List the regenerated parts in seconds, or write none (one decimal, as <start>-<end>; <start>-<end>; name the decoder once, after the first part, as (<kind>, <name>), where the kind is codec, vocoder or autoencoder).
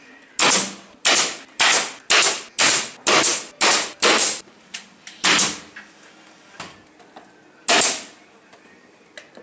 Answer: none